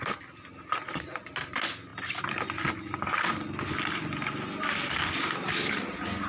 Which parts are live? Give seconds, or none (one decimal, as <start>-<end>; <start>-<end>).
0.0-6.3